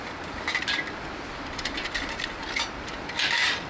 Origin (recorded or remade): recorded